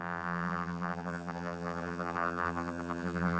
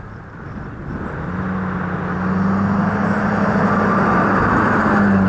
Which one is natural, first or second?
second